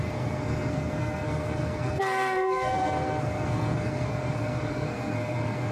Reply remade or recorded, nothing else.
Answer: remade